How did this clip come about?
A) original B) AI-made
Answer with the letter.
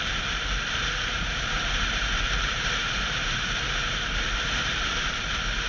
B